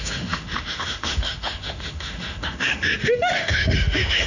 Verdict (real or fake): fake